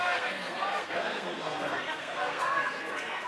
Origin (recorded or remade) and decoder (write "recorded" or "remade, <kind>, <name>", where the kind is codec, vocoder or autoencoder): remade, codec, SNAC